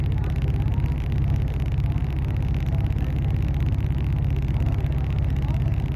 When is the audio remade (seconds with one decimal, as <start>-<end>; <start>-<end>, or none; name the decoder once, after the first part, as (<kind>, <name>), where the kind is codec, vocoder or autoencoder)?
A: none